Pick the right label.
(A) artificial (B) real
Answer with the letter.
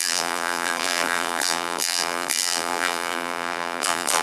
A